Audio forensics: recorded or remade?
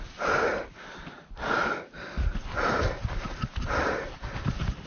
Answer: remade